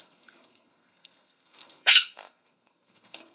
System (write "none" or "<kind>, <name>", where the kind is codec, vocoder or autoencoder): codec, SNAC